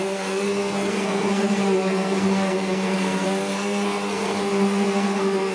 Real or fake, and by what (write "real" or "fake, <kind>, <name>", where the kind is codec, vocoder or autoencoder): fake, codec, SNAC